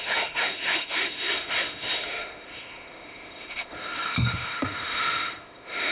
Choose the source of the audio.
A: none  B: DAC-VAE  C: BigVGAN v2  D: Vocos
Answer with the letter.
B